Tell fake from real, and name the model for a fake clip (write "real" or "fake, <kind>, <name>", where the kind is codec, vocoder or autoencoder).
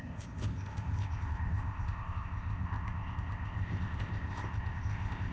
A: fake, codec, ZipCodec